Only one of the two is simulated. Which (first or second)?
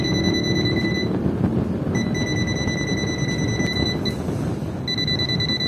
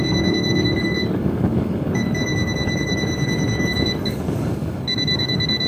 second